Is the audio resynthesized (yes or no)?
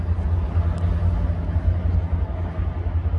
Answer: no